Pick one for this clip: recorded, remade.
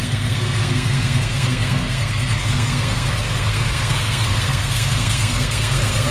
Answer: remade